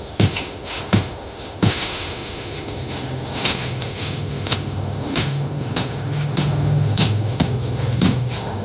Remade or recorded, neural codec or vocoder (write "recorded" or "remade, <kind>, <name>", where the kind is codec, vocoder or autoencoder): remade, autoencoder, DAC-VAE